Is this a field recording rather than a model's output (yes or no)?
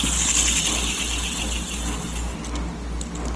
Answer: yes